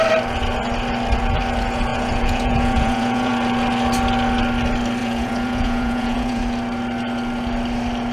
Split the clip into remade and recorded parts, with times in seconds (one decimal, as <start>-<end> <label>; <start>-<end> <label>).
0.0-1.9 recorded; 1.9-3.3 remade; 3.3-5.0 recorded; 5.0-6.4 remade; 6.4-8.1 recorded